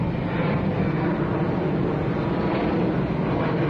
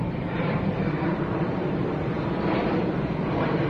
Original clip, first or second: first